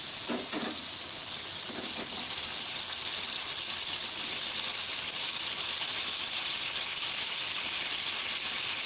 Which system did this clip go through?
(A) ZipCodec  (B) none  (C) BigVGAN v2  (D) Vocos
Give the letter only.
B